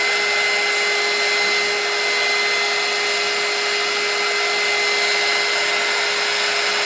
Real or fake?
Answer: real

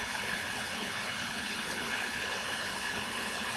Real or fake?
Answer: fake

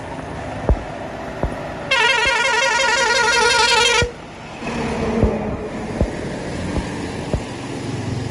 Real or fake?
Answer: real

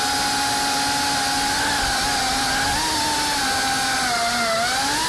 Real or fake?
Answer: real